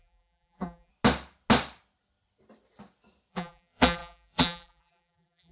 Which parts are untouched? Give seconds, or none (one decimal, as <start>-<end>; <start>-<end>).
0.9-3.3

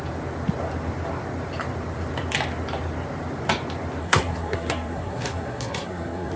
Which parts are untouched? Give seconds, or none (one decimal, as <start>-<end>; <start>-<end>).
0.0-4.0

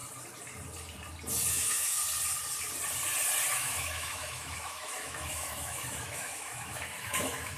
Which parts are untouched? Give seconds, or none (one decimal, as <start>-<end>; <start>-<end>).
0.0-1.5; 2.0-3.5

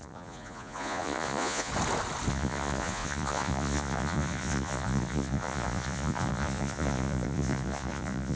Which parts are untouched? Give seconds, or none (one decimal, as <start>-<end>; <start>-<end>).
1.7-2.3

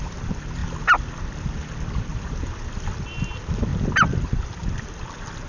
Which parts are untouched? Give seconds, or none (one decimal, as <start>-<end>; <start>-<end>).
0.6-1.3; 2.1-2.9; 3.7-5.5

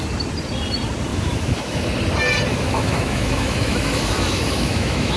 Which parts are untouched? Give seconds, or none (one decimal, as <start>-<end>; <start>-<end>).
0.0-1.1; 1.9-2.5